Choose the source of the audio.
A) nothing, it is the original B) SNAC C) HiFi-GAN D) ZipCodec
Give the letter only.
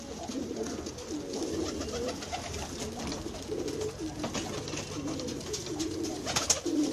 A